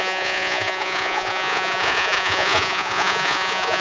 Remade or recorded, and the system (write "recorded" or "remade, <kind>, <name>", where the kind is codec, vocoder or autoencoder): remade, vocoder, Vocos